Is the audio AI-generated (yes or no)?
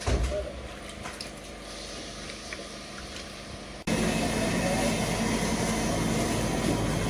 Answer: no